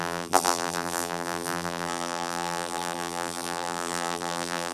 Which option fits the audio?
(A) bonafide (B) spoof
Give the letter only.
B